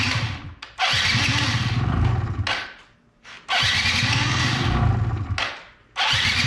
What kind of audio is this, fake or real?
real